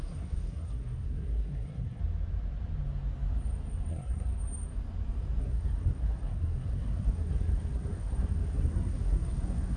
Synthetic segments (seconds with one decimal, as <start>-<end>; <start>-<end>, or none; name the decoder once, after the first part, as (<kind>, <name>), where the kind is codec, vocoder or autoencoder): 0.0-2.0 (codec, SNAC); 3.9-4.3; 5.4-9.8